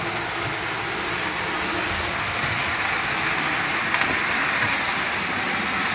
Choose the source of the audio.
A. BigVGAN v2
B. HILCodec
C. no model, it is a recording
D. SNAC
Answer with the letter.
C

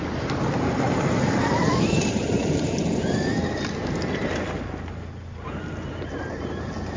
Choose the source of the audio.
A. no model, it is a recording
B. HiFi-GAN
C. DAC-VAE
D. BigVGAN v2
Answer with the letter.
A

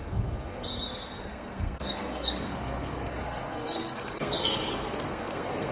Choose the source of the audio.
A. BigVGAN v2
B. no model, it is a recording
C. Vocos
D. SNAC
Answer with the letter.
D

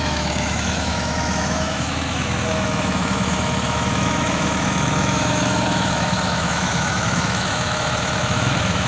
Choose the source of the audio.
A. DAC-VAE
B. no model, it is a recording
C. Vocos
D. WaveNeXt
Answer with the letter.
A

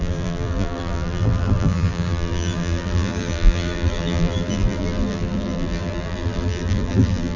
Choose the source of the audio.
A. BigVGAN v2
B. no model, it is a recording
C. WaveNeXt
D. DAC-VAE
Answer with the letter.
A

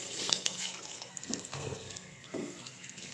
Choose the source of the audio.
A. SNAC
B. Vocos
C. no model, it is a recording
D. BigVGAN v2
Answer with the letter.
A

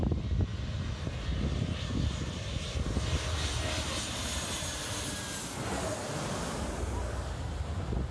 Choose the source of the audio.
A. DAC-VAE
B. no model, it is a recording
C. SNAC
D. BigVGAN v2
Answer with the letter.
B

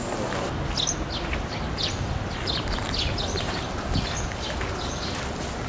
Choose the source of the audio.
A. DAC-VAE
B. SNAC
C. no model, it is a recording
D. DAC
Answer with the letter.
C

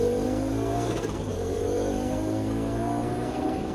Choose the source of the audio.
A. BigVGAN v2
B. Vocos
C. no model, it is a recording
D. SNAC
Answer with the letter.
D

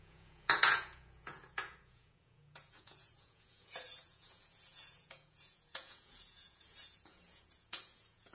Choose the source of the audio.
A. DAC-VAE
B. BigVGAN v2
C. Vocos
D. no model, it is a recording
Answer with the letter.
C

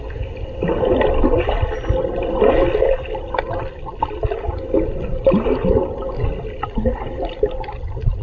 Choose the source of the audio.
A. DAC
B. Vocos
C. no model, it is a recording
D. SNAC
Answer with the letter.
C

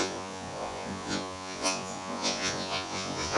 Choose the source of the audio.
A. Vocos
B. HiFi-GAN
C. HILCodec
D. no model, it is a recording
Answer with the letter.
A